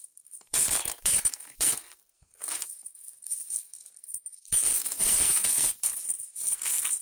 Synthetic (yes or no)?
yes